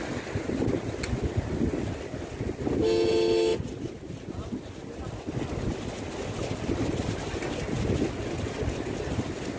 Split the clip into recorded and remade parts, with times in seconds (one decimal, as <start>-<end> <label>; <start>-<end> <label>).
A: 0.0-9.6 recorded